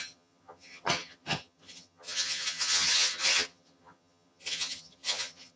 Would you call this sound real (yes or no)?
no